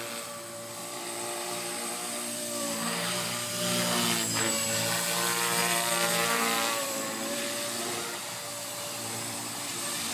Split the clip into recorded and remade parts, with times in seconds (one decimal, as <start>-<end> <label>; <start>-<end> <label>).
0.0-0.8 recorded; 0.8-3.5 remade; 3.5-5.6 recorded; 5.6-7.4 remade; 7.4-8.5 recorded; 8.5-10.1 remade